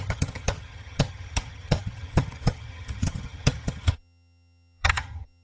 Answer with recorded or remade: remade